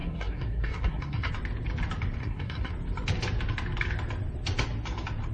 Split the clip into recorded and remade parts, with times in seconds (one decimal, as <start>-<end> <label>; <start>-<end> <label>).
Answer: 0.0-1.3 remade; 1.3-2.2 recorded; 2.2-2.7 remade; 2.7-5.3 recorded